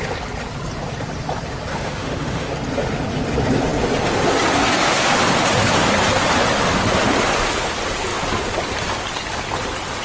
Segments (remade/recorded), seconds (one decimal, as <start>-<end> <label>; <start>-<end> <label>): 0.0-1.7 recorded; 1.7-2.5 remade; 2.5-10.0 recorded